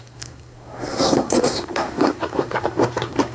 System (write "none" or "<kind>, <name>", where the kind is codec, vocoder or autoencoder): codec, SNAC